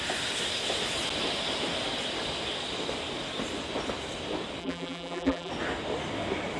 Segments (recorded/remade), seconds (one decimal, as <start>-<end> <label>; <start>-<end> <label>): 0.0-4.6 recorded; 4.6-5.5 remade; 5.5-6.6 recorded

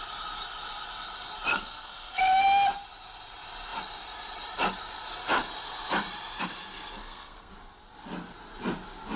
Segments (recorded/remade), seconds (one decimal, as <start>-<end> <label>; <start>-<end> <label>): 0.0-1.5 recorded; 1.5-2.2 remade; 2.2-7.0 recorded; 7.0-7.5 remade; 7.5-9.2 recorded

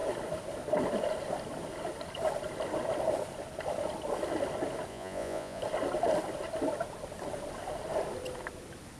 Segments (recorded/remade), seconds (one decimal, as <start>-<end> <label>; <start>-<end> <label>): 0.0-4.9 recorded; 4.9-5.6 remade; 5.6-9.0 recorded

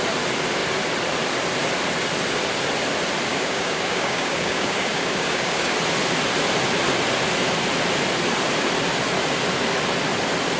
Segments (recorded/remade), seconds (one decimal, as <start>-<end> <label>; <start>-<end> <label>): 0.0-3.3 recorded; 3.3-5.7 remade; 5.7-10.6 recorded

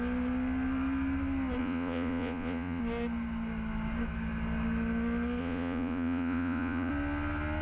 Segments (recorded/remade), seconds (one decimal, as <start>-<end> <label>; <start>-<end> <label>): 0.0-1.6 recorded; 1.6-2.8 remade; 2.8-5.4 recorded; 5.4-6.9 remade; 6.9-7.6 recorded

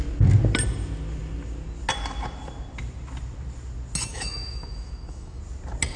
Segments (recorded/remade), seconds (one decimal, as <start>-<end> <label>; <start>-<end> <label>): 0.0-4.1 recorded; 4.1-5.4 remade; 5.4-6.0 recorded

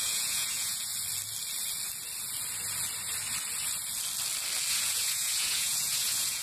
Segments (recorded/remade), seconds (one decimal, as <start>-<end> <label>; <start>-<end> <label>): 0.0-0.9 remade; 0.9-4.7 recorded; 4.7-6.4 remade

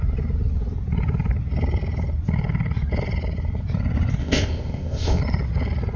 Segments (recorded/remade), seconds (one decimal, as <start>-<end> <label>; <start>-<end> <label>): 0.0-4.2 recorded; 4.2-5.2 remade; 5.2-6.0 recorded